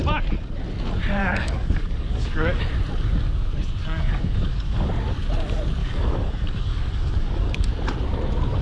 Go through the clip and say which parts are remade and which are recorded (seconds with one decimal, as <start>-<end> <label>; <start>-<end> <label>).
0.0-1.2 recorded; 1.2-2.6 remade; 2.6-3.8 recorded; 3.8-4.9 remade; 4.9-5.8 recorded; 5.8-7.7 remade; 7.7-8.6 recorded